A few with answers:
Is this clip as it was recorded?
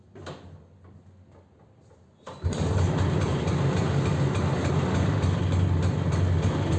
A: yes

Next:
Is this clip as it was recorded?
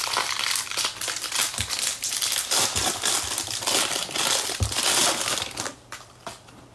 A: yes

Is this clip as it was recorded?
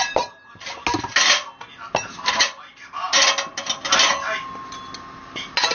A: yes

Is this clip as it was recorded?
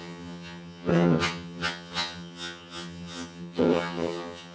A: no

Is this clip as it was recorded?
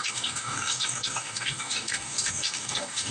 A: no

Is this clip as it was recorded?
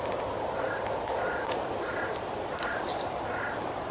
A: yes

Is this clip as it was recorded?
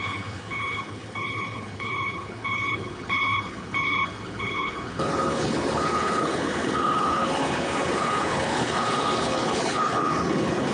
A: no